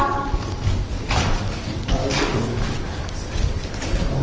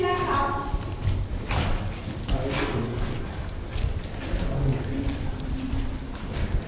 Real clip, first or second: second